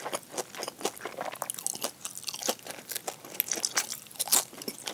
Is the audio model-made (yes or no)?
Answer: no